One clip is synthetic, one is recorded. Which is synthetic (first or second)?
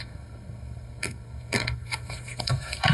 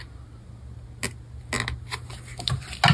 first